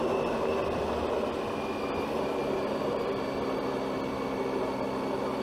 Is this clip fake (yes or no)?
no